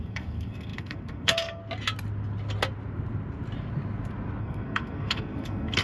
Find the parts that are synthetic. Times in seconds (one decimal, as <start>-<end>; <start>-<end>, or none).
0.0-1.6; 4.4-5.8